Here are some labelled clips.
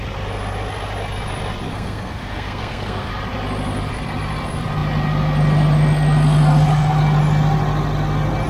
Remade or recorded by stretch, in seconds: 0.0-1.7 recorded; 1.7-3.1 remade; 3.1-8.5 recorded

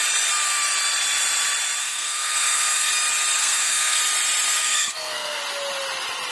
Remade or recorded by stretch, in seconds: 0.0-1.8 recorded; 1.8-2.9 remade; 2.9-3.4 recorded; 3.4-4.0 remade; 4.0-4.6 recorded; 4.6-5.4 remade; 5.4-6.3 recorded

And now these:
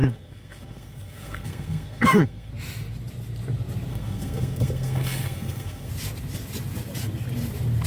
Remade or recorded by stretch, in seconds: 0.0-2.5 remade; 2.5-3.9 recorded; 3.9-5.9 remade; 5.9-7.9 recorded